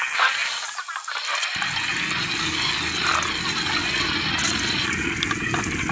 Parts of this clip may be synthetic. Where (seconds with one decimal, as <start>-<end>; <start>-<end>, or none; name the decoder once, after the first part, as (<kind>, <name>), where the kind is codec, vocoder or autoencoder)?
none